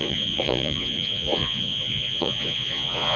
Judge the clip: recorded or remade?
remade